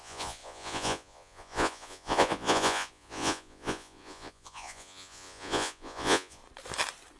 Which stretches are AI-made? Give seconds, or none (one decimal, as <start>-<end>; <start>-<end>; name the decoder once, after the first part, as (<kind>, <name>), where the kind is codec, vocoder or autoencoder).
0.0-6.4 (vocoder, Vocos)